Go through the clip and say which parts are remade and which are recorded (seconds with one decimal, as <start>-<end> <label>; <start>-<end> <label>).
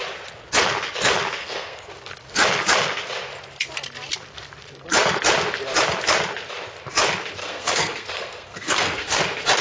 0.0-1.4 recorded; 1.4-1.9 remade; 1.9-7.4 recorded; 7.4-9.2 remade; 9.2-9.6 recorded